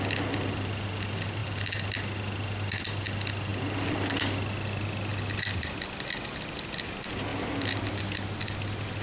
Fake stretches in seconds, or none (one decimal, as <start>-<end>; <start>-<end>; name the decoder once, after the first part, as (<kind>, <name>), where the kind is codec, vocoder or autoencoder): none